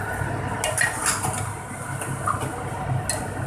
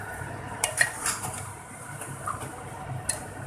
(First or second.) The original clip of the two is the first